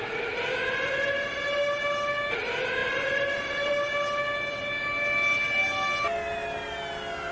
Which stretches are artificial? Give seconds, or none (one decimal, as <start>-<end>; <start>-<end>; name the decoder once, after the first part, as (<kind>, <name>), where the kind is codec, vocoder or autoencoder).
none